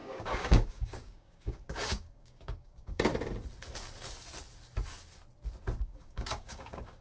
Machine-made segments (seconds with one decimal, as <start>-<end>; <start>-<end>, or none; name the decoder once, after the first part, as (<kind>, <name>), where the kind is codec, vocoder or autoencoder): 0.0-3.1 (codec, DAC); 5.8-7.0